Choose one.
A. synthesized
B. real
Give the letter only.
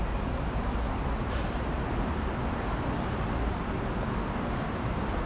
B